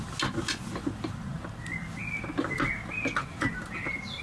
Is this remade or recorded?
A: recorded